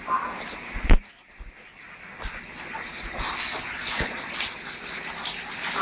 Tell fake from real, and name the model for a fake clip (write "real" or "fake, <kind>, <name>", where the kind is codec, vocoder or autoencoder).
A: real